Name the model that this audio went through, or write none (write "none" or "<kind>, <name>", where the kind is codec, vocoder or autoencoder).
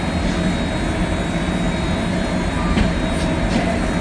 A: none